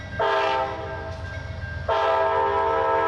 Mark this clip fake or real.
real